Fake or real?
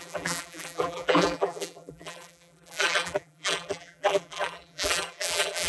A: fake